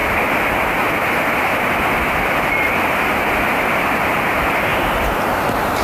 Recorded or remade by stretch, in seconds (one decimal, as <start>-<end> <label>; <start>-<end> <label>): 0.0-3.5 recorded; 3.5-5.8 remade